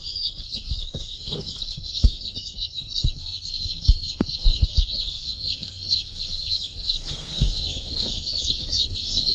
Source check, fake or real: fake